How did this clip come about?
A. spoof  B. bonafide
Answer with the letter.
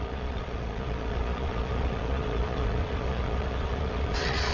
A